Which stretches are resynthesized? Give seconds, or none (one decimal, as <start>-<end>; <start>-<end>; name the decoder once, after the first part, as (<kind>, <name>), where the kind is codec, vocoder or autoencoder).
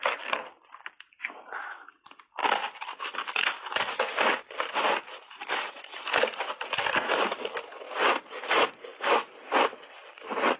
0.0-2.4 (vocoder, BigVGAN v2); 4.7-8.9